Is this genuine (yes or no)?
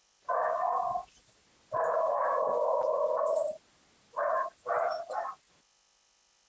yes